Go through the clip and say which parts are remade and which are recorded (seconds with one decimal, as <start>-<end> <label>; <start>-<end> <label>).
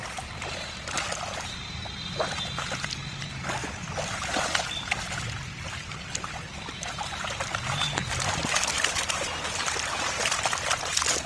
0.0-11.3 recorded